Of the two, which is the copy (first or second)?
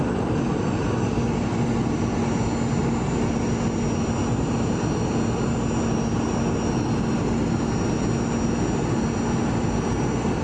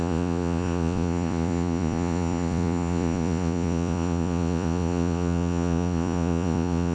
second